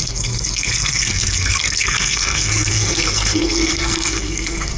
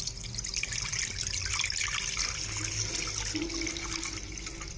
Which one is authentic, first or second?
second